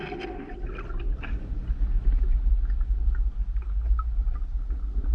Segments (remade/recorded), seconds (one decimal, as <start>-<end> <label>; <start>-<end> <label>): 0.0-5.1 recorded